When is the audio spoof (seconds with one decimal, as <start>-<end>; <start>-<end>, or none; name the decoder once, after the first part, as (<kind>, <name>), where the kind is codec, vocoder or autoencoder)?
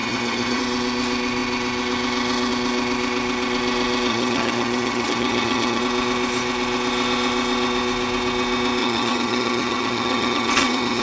0.0-0.6 (vocoder, HiFi-GAN); 4.1-5.8; 8.8-11.0